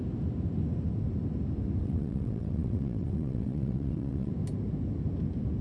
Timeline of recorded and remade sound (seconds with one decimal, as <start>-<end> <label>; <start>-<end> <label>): 0.0-1.8 recorded; 1.8-4.3 remade; 4.3-5.6 recorded